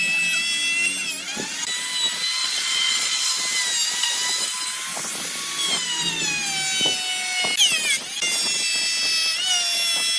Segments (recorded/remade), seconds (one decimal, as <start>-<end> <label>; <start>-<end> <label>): 0.0-2.4 recorded; 2.4-3.3 remade; 3.3-10.2 recorded